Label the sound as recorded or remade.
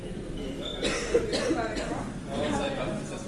recorded